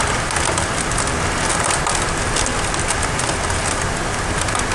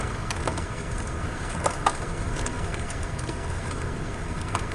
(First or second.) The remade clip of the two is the second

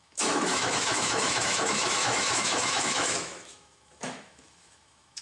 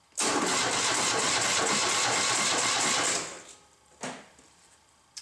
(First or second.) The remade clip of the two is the first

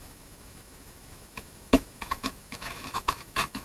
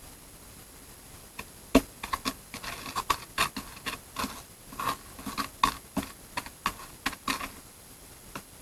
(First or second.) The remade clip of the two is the first